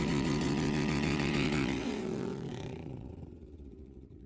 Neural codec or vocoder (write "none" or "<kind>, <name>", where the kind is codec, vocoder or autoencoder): vocoder, WaveNeXt